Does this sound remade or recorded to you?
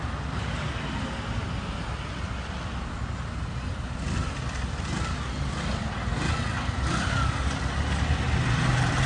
recorded